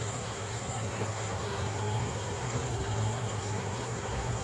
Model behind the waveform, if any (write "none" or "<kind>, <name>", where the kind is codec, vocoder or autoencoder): codec, SNAC